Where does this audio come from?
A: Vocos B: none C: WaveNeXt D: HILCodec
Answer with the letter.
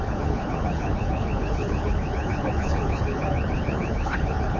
D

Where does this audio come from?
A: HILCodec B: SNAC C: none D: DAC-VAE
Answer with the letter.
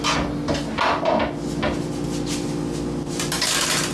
C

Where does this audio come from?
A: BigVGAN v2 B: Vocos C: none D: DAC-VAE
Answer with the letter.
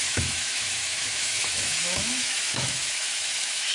D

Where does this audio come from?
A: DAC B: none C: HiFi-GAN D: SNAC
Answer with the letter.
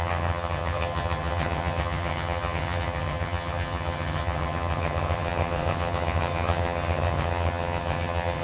C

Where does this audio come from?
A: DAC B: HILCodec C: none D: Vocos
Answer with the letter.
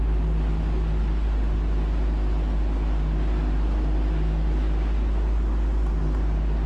C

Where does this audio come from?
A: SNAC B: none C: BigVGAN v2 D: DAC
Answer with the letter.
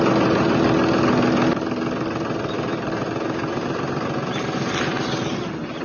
B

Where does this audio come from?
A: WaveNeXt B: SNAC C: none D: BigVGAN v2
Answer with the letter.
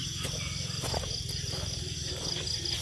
C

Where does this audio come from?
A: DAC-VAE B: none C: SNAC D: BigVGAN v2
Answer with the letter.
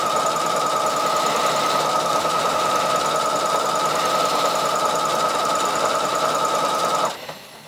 B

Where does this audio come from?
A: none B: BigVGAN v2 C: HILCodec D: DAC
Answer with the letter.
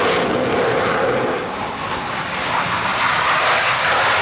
A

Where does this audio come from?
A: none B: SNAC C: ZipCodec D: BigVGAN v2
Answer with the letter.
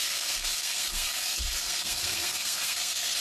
B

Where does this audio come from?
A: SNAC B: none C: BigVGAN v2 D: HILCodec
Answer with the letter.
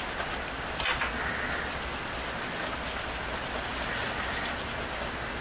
B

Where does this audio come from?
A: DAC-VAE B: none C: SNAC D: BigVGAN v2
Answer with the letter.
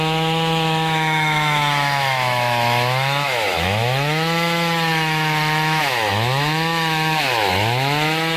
A